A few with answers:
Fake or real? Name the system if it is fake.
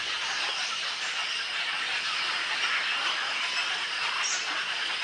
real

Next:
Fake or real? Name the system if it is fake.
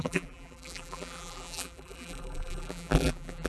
fake, vocoder, BigVGAN v2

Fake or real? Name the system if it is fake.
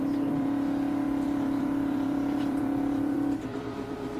fake, vocoder, BigVGAN v2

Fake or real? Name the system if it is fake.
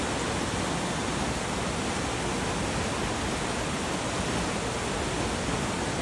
real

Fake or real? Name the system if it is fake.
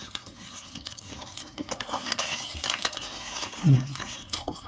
fake, codec, SNAC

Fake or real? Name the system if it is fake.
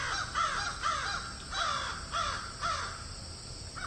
real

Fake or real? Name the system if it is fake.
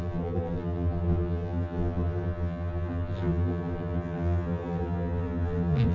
fake, vocoder, BigVGAN v2